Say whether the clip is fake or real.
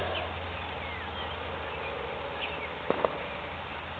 real